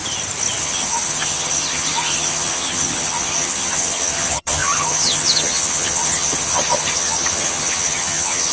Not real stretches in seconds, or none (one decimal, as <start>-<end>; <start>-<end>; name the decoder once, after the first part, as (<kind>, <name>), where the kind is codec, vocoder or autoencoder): 0.6-8.5 (vocoder, HiFi-GAN)